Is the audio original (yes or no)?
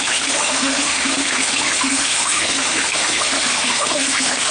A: no